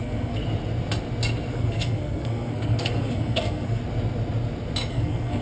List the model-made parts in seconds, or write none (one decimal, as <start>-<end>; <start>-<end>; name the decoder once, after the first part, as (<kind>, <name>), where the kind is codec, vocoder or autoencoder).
0.0-0.4 (codec, SNAC); 1.5-3.8; 4.9-5.4